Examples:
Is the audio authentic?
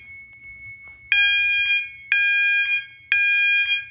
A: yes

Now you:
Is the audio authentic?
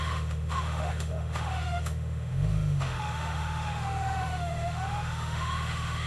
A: no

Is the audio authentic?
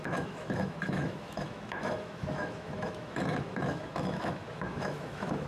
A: no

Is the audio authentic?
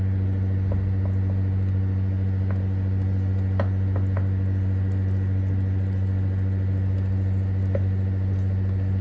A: yes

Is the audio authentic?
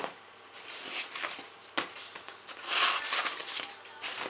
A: yes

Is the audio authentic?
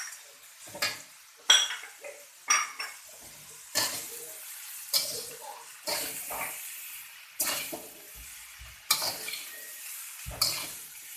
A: yes